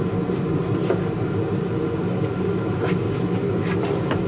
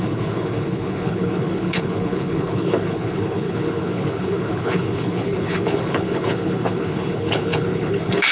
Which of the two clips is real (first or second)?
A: first